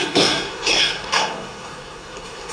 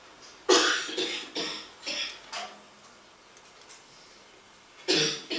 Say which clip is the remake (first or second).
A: first